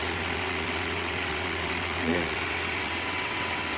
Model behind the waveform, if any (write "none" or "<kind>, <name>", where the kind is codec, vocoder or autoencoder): vocoder, WaveNeXt